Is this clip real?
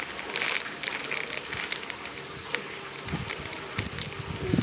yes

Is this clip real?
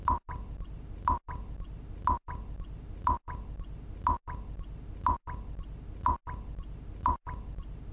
yes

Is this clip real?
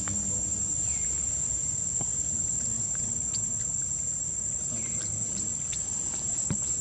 yes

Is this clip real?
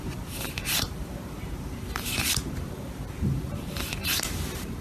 no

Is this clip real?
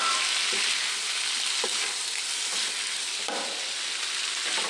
yes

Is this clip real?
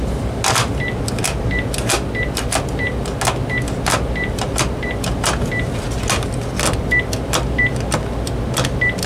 yes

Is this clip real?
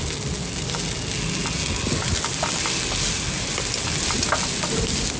yes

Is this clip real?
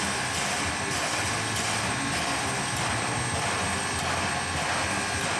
yes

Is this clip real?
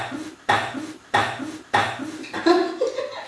no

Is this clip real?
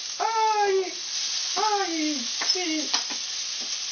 yes